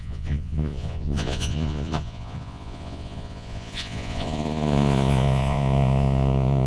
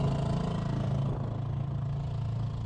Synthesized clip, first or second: first